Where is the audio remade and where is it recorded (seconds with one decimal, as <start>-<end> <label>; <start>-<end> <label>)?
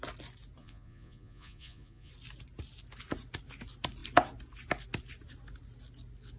0.0-0.6 recorded; 0.6-2.1 remade; 2.1-6.4 recorded